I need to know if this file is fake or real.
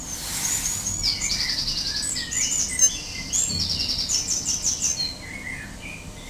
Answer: real